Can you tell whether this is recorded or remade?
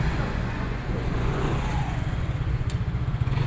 remade